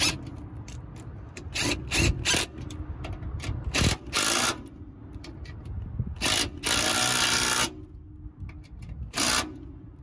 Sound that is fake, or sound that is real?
real